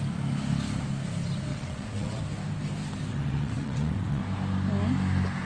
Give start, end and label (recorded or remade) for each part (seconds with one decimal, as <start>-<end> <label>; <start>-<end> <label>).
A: 0.0-1.5 recorded; 1.5-2.2 remade; 2.2-3.1 recorded; 3.1-4.2 remade; 4.2-5.4 recorded